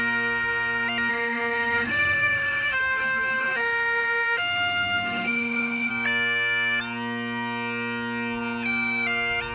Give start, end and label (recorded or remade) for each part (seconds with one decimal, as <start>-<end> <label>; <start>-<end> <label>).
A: 0.0-1.1 recorded; 1.1-5.9 remade; 5.9-9.5 recorded